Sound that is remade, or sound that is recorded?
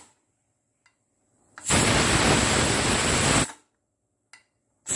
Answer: recorded